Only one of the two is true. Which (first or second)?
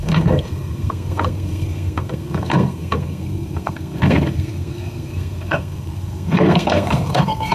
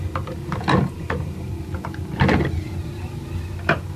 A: second